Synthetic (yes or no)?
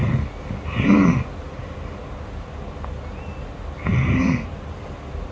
no